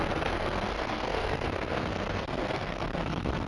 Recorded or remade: remade